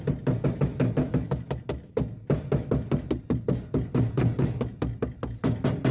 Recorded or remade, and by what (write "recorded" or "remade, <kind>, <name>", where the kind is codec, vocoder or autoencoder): recorded